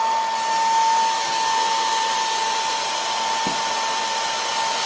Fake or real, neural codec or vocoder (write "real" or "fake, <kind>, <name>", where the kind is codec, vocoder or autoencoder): real